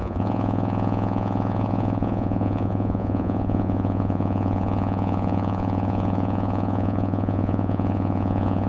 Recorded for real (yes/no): no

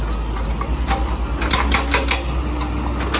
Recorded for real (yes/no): yes